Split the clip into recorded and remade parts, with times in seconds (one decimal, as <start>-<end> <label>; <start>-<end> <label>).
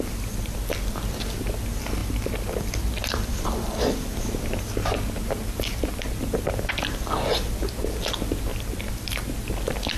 0.0-2.0 recorded; 2.0-6.5 remade; 6.5-8.5 recorded; 8.5-9.3 remade; 9.3-10.0 recorded